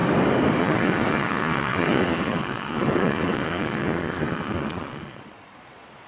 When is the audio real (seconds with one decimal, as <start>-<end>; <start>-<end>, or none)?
0.0-0.6